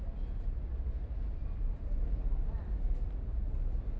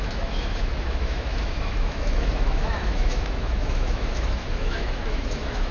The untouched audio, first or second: first